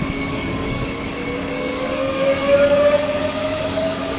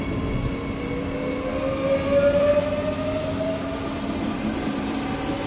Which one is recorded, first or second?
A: second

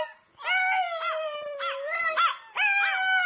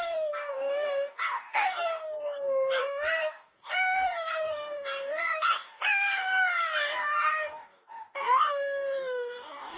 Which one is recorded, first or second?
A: first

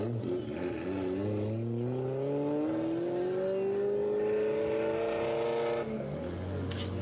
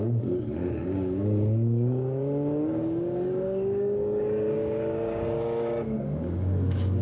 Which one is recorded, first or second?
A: first